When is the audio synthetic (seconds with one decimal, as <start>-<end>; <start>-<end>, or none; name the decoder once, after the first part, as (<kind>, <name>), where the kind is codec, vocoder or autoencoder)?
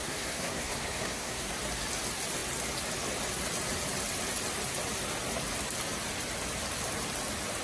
0.0-1.5 (codec, SNAC)